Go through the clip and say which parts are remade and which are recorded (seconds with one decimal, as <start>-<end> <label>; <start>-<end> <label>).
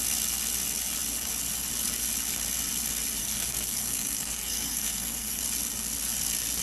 0.0-3.2 recorded; 3.2-5.4 remade; 5.4-6.6 recorded